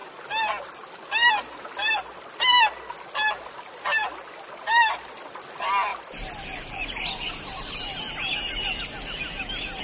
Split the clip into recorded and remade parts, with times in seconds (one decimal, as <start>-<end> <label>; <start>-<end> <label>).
0.0-9.8 recorded